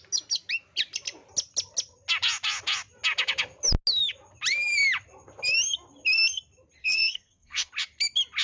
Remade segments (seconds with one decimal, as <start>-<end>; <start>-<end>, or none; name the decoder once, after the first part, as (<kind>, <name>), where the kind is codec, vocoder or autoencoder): 6.8-7.7 (codec, SNAC)